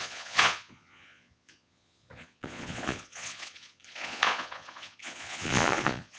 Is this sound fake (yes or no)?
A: yes